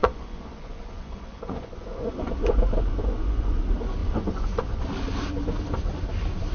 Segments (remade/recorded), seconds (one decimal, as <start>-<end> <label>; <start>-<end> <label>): 0.0-3.6 remade; 3.6-4.0 recorded; 4.0-4.8 remade; 4.8-6.5 recorded